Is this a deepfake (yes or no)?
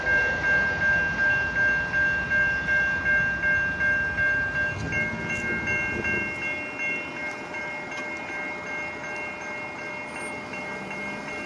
no